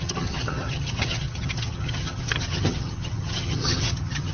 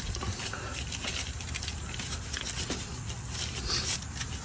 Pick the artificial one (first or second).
first